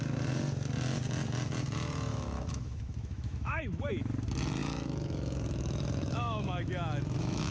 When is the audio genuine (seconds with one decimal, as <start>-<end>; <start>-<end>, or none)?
0.0-2.1; 3.9-4.6